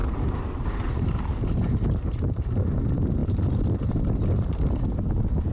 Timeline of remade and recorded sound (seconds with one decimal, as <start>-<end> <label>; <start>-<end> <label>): 0.0-2.8 remade; 2.8-5.5 recorded